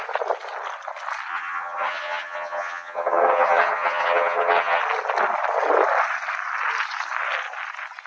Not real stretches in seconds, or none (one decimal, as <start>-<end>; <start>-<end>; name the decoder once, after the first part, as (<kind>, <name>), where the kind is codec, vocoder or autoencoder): 1.3-4.8 (vocoder, HiFi-GAN)